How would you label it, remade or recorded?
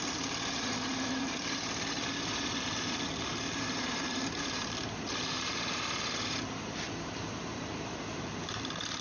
remade